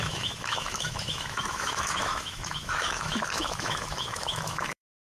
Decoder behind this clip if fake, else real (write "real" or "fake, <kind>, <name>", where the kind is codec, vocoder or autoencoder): fake, autoencoder, DAC-VAE